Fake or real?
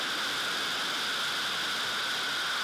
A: real